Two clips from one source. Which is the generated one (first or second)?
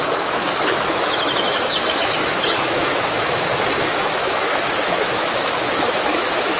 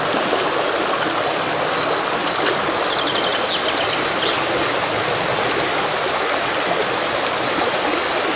first